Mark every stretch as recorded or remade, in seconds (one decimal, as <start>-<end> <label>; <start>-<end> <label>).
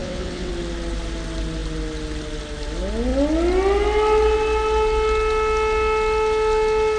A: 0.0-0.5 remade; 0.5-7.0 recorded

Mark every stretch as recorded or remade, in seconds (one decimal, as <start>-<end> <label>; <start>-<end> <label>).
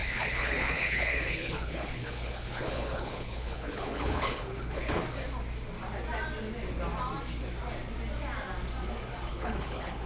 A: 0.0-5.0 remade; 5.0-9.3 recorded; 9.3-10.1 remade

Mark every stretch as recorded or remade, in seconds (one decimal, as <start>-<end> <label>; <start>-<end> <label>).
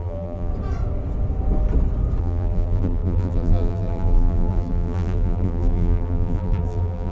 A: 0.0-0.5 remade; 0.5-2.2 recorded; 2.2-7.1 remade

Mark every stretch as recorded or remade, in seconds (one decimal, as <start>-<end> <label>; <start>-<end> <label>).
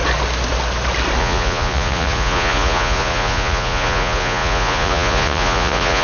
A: 0.0-1.2 recorded; 1.2-6.0 remade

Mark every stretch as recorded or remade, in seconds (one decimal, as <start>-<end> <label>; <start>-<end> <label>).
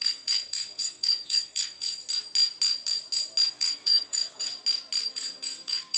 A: 0.0-2.0 remade; 2.0-3.5 recorded; 3.5-4.5 remade; 4.5-5.1 recorded; 5.1-6.0 remade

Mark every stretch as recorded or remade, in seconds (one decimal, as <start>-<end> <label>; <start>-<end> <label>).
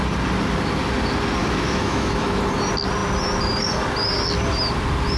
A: 0.0-1.4 recorded; 1.4-2.4 remade; 2.4-5.2 recorded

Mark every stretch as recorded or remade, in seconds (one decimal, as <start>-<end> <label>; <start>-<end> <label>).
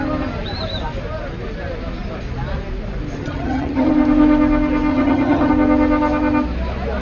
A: 0.0-3.2 recorded; 3.2-3.9 remade; 3.9-4.9 recorded; 4.9-5.5 remade; 5.5-7.0 recorded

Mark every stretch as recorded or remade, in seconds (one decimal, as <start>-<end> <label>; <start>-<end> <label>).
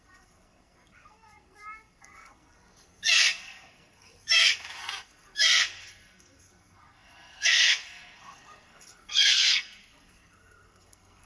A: 0.0-11.3 remade